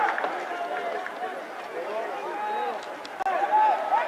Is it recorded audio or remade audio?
recorded